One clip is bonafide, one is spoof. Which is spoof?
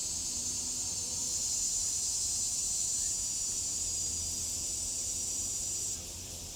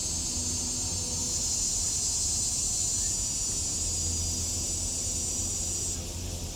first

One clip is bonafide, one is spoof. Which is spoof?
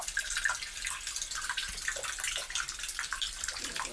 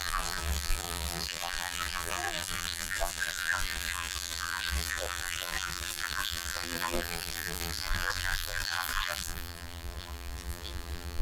second